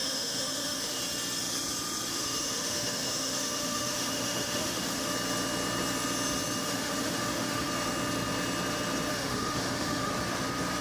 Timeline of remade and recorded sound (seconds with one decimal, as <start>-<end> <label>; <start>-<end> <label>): 0.0-1.0 remade; 1.0-2.1 recorded; 2.1-5.1 remade; 5.1-6.6 recorded; 6.6-7.7 remade; 7.7-9.1 recorded; 9.1-10.1 remade; 10.1-10.8 recorded